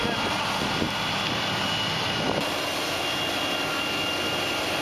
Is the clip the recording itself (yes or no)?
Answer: yes